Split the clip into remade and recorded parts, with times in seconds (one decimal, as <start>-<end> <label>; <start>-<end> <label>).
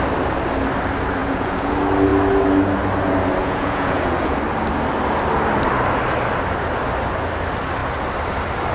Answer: 0.0-1.2 recorded; 1.2-1.7 remade; 1.7-3.4 recorded; 3.4-4.4 remade; 4.4-8.7 recorded